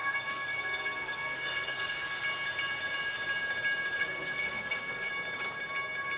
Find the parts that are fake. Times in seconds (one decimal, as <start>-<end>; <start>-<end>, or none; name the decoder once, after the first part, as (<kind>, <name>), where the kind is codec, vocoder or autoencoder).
0.0-1.9 (codec, SNAC); 4.0-5.1